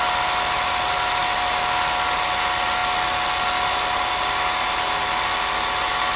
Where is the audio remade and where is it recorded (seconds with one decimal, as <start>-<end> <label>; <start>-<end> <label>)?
0.0-6.2 recorded

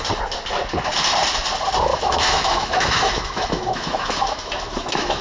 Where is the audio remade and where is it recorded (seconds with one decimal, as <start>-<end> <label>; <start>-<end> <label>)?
0.0-1.9 recorded; 1.9-5.2 remade

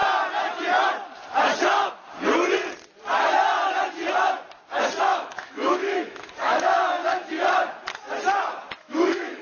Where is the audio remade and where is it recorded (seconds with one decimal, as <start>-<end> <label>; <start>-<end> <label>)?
0.0-5.0 recorded; 5.0-7.0 remade; 7.0-8.8 recorded; 8.8-9.4 remade

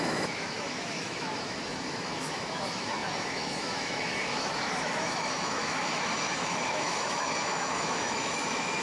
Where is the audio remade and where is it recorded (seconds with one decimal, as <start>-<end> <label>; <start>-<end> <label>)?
0.0-8.8 remade

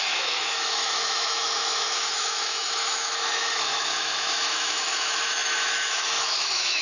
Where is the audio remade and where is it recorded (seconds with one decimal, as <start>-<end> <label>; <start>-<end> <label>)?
0.0-6.8 remade

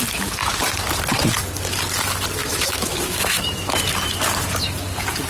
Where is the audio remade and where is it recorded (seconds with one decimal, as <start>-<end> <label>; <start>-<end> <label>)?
0.0-2.4 recorded; 2.4-3.7 remade; 3.7-5.3 recorded

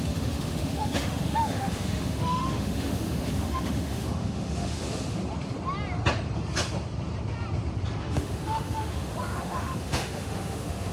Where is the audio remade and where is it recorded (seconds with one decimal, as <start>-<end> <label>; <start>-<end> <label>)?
0.0-5.2 remade; 5.2-8.0 recorded; 8.0-10.9 remade

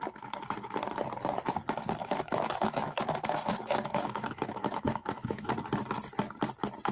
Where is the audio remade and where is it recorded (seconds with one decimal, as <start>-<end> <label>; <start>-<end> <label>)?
0.0-2.0 recorded; 2.0-5.5 remade; 5.5-6.9 recorded